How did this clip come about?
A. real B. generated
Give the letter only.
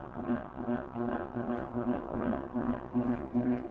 B